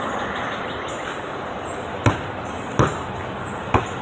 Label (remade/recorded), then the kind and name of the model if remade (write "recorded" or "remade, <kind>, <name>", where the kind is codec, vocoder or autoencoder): recorded